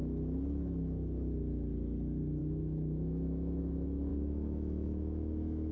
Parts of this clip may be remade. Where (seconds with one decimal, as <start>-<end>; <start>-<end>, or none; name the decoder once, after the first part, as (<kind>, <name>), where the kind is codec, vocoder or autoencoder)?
2.4-3.6 (autoencoder, DAC-VAE); 4.1-5.7